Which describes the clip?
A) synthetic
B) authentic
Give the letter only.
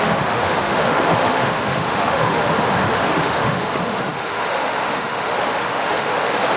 A